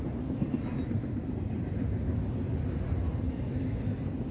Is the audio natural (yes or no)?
yes